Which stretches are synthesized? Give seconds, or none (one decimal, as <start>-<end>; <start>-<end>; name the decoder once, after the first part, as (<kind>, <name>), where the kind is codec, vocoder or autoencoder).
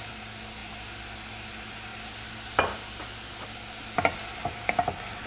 none